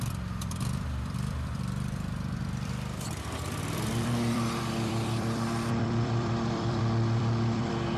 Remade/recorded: remade